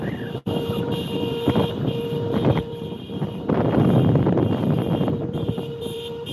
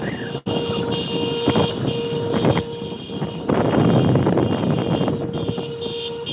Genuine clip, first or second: second